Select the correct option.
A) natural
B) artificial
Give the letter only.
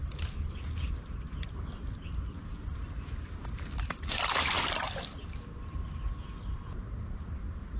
A